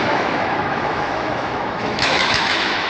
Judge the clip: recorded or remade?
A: remade